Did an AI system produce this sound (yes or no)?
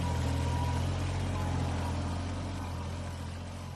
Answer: no